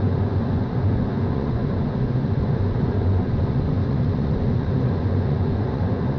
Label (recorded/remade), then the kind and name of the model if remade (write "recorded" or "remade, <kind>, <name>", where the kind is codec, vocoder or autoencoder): remade, vocoder, Vocos